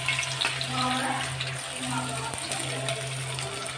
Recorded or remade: recorded